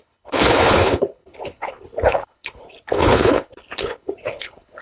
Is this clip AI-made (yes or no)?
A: yes